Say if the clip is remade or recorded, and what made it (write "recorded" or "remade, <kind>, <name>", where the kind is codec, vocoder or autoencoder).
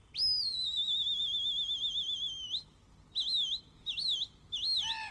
recorded